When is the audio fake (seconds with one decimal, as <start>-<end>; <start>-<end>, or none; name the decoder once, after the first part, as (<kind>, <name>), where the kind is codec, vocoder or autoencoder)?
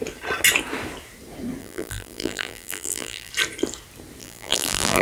1.6-3.3 (vocoder, BigVGAN v2); 4.2-5.0